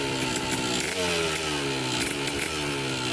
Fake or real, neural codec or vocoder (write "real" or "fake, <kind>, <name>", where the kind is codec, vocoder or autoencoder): real